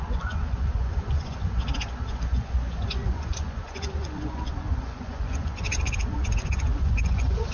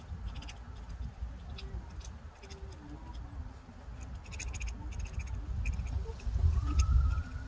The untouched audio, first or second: second